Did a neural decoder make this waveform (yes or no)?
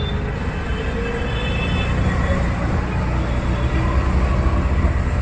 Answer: no